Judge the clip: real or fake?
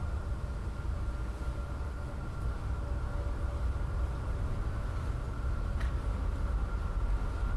real